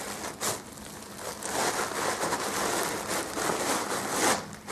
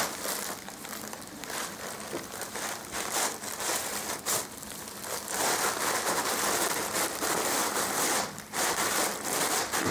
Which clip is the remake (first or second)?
second